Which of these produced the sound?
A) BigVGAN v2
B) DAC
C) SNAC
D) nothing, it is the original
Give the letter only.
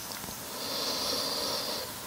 D